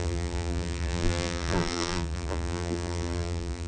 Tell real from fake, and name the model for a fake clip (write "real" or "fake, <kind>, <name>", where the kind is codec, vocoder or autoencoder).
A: fake, vocoder, BigVGAN v2